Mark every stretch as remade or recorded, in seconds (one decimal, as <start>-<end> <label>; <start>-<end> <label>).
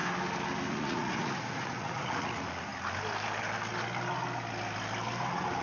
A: 0.0-0.7 recorded; 0.7-2.7 remade; 2.7-5.6 recorded